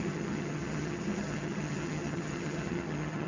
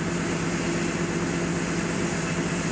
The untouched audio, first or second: second